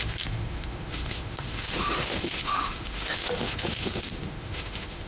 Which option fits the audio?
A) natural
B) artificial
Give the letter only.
B